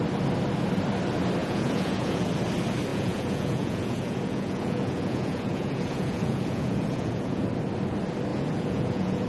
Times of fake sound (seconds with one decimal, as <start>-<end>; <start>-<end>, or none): 1.4-2.3; 2.9-7.4; 8.3-9.3